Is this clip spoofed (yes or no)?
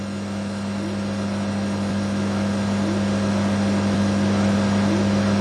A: no